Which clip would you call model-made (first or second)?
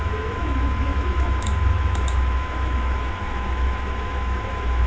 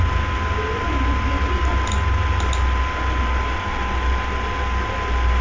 first